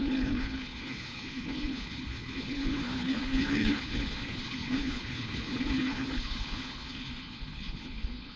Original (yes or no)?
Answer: no